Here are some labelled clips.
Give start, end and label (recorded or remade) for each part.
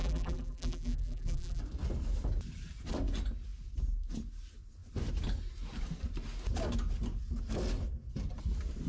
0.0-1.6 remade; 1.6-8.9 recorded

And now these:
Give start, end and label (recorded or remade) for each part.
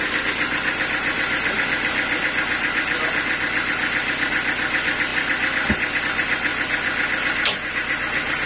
0.0-8.5 recorded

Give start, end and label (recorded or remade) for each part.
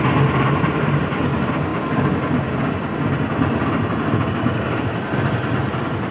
0.0-6.1 recorded